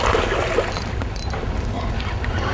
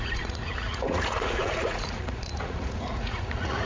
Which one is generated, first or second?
second